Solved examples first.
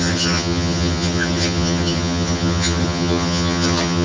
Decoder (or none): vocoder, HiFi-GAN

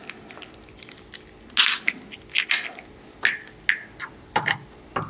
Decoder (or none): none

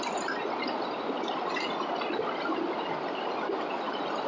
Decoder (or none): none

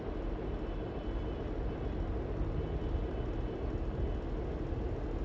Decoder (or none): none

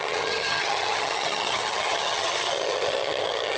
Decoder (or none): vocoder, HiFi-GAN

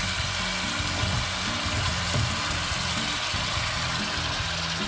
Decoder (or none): none